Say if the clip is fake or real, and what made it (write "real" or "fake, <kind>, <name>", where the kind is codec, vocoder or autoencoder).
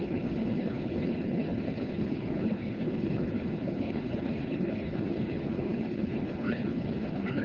fake, codec, HILCodec